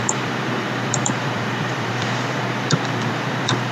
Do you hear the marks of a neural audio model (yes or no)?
yes